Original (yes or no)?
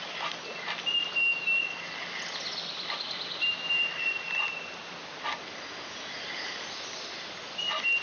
yes